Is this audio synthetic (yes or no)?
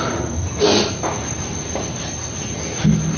no